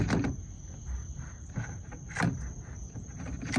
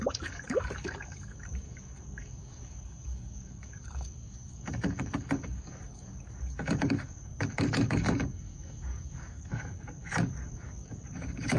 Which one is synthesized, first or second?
second